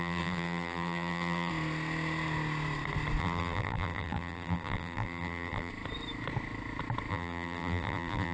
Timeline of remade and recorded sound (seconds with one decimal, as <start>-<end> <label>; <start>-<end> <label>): 0.0-1.5 remade; 1.5-3.2 recorded; 3.2-5.7 remade; 5.7-7.1 recorded; 7.1-8.3 remade